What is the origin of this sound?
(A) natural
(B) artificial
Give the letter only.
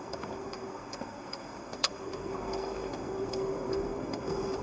B